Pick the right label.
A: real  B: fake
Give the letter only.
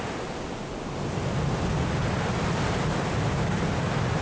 A